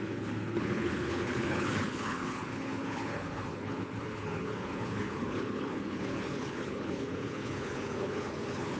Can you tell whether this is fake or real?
fake